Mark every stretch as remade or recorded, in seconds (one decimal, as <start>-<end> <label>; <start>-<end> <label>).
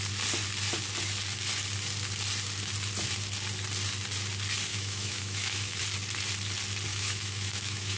0.0-4.7 recorded; 4.7-5.8 remade; 5.8-6.9 recorded; 6.9-8.0 remade